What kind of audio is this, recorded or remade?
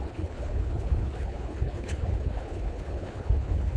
remade